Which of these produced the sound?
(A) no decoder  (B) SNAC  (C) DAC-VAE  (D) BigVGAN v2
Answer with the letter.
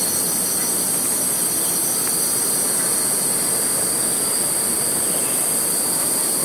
A